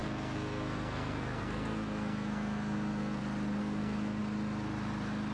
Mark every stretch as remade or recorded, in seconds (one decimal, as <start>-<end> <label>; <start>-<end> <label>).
0.0-3.2 remade; 3.2-3.6 recorded; 3.6-4.2 remade; 4.2-5.3 recorded